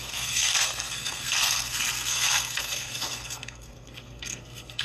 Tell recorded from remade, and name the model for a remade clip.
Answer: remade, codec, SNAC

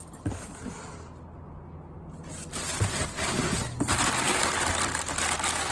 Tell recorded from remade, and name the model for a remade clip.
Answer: recorded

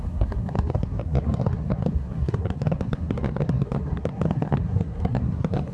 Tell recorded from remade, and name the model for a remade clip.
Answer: remade, codec, SNAC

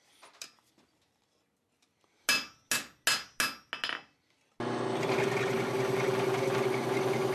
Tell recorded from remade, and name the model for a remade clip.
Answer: recorded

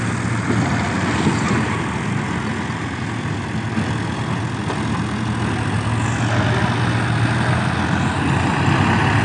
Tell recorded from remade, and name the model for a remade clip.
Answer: recorded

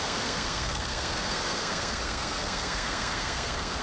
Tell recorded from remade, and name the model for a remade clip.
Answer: remade, codec, SNAC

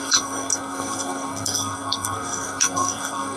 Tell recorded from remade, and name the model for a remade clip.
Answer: remade, codec, SNAC